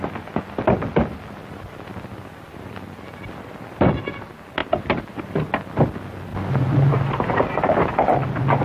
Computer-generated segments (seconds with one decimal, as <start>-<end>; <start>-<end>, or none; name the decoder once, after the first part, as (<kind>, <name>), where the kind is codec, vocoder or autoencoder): none